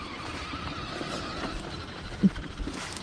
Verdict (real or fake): fake